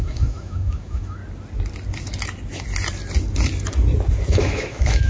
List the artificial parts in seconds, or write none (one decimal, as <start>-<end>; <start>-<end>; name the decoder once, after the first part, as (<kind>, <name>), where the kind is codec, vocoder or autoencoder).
0.0-1.2 (autoencoder, DAC-VAE); 4.3-5.1